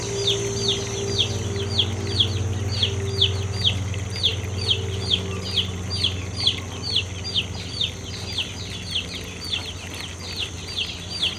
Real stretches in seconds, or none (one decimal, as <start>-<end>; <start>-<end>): 0.0-11.4